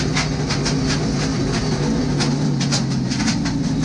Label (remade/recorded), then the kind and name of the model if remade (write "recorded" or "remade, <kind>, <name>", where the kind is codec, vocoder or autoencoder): recorded